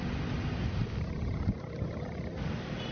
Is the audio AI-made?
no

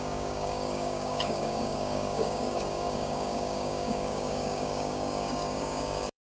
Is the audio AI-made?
yes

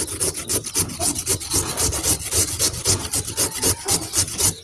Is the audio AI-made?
no